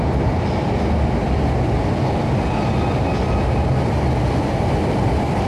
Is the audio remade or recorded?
recorded